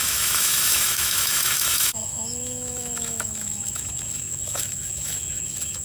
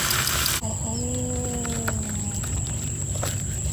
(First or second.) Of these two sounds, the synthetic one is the first